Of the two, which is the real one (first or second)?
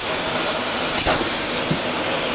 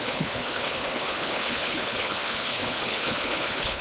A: first